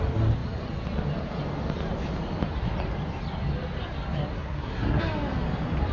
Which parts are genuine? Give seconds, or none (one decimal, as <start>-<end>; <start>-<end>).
0.0-4.3; 5.0-5.9